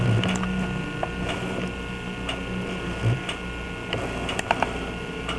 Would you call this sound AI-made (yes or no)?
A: no